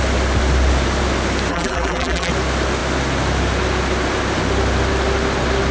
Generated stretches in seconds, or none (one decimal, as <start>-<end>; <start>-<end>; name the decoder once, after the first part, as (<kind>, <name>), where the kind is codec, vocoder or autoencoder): 1.5-2.3 (vocoder, BigVGAN v2)